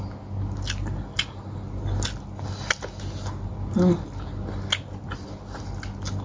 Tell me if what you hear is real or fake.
real